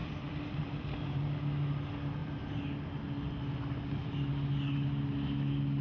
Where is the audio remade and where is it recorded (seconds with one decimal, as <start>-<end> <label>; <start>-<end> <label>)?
0.0-1.3 remade; 1.3-5.8 recorded